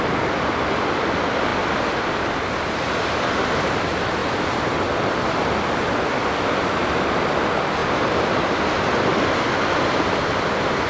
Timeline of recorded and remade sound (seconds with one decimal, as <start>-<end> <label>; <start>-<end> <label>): 0.0-10.9 recorded